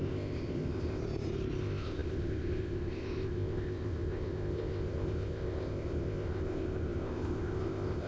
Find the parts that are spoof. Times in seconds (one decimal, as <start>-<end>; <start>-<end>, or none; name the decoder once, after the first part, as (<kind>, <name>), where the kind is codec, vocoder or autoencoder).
0.0-1.0 (codec, ZipCodec); 1.6-8.1